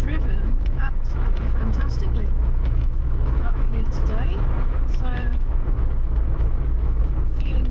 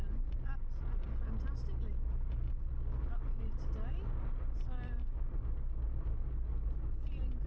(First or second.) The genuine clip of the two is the second